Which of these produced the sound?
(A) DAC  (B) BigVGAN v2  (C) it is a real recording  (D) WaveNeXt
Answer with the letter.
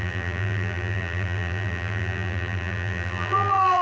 B